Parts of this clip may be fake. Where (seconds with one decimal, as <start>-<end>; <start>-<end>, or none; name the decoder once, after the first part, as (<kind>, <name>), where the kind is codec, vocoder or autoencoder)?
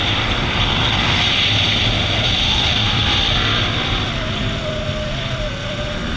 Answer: 0.0-3.0 (vocoder, BigVGAN v2); 4.4-6.2